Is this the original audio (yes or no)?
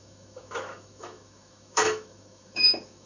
no